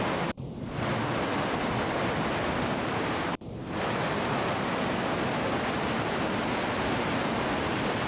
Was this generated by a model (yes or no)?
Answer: no